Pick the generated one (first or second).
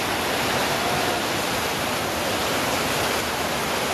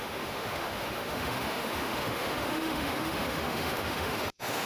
second